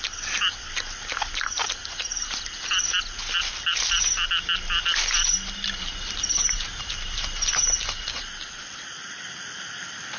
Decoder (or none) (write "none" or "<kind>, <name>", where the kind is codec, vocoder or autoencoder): none